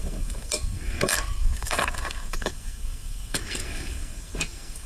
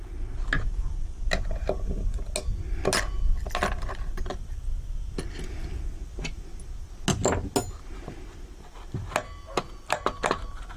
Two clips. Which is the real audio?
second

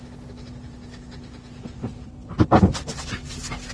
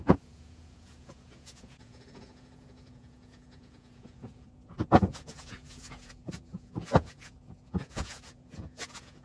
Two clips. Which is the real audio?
first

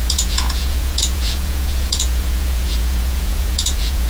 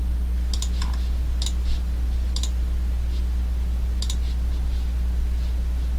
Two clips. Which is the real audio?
second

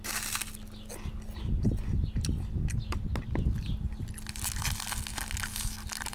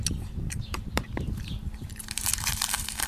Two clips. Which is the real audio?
first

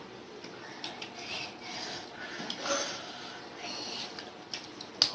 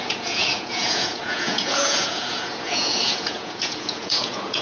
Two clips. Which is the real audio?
first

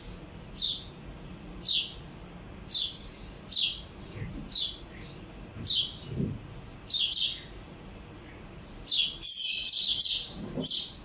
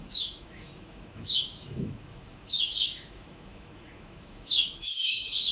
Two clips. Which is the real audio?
first